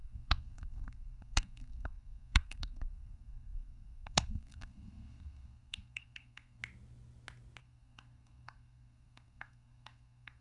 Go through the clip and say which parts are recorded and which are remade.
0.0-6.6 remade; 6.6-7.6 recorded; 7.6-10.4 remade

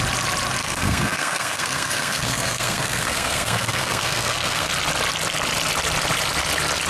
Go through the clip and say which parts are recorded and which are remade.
0.0-0.6 recorded; 0.6-4.7 remade; 4.7-6.9 recorded

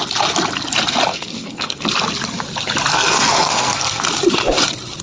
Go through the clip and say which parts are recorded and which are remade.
0.0-1.1 recorded; 1.1-1.8 remade; 1.8-2.9 recorded; 2.9-4.0 remade; 4.0-5.0 recorded

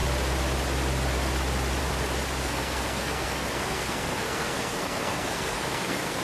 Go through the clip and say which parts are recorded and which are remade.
0.0-2.4 recorded; 2.4-6.2 remade

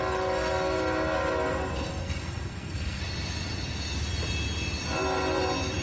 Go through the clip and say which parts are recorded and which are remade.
0.0-2.0 recorded; 2.0-3.0 remade; 3.0-5.8 recorded

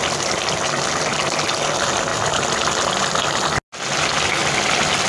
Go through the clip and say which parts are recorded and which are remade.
0.0-5.1 recorded

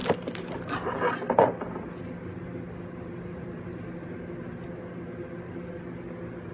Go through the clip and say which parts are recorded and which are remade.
0.0-6.5 recorded